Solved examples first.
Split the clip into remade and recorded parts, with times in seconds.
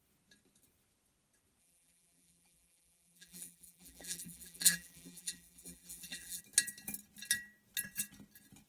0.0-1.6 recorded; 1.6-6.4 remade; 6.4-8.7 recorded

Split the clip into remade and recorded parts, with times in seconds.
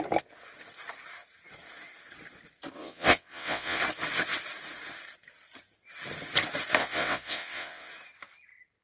0.0-2.8 recorded; 2.8-3.8 remade; 3.8-6.8 recorded; 6.8-7.9 remade; 7.9-8.8 recorded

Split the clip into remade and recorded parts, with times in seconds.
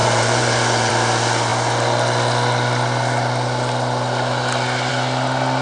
0.0-0.9 remade; 0.9-5.6 recorded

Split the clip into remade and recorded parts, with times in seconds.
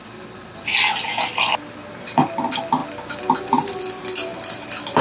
0.0-5.0 recorded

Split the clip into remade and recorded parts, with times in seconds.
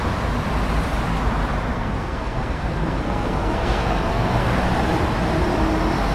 0.0-1.7 recorded; 1.7-4.6 remade; 4.6-6.1 recorded